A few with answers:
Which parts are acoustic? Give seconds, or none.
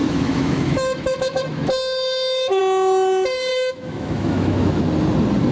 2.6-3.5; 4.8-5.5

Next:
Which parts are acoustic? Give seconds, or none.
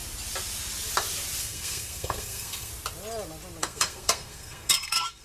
0.0-1.4; 2.7-3.6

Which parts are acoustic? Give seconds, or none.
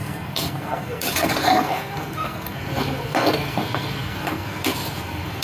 none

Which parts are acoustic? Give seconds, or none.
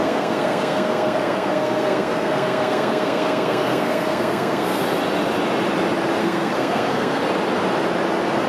4.8-6.2; 7.2-8.5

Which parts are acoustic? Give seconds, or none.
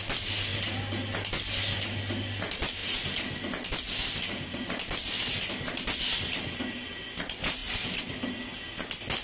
0.0-9.2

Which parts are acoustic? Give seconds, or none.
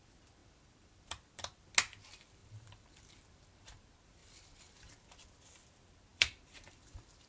0.0-0.4; 1.7-2.4; 3.1-4.2; 4.9-6.1